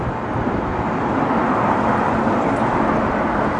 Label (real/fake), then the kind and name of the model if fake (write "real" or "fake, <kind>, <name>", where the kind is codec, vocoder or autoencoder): real